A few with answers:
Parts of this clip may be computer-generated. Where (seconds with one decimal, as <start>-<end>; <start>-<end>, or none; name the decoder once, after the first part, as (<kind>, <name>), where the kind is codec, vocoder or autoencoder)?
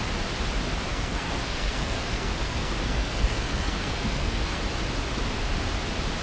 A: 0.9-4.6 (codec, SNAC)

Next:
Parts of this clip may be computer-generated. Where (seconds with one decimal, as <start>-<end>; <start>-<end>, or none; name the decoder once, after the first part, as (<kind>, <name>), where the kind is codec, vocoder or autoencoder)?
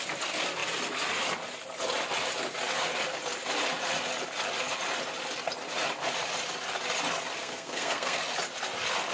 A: 7.4-8.2 (codec, SNAC)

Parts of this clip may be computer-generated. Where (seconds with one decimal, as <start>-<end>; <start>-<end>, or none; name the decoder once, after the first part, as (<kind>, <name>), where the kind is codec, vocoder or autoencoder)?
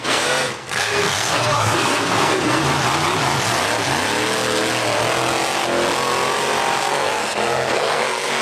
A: 0.0-2.6 (codec, SNAC); 6.8-8.4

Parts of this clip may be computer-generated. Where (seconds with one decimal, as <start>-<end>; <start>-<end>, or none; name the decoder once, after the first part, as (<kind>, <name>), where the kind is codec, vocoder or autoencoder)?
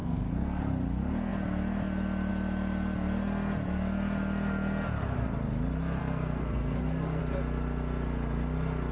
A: 0.0-0.6 (codec, SNAC); 6.0-7.2